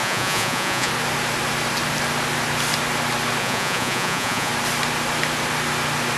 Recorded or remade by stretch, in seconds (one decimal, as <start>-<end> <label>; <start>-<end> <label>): 0.0-0.9 remade; 0.9-3.4 recorded; 3.4-4.5 remade; 4.5-6.2 recorded